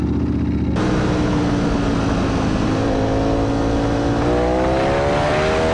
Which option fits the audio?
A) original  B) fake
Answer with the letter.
A